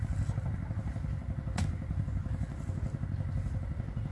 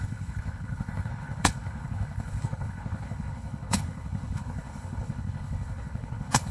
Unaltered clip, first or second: first